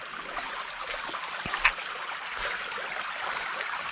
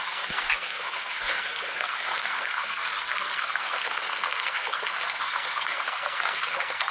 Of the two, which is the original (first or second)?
first